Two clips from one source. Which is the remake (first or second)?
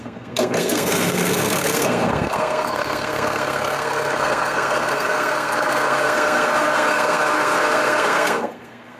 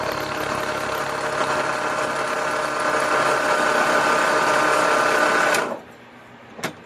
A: first